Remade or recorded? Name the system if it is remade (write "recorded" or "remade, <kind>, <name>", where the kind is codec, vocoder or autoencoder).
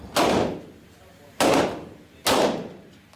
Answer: recorded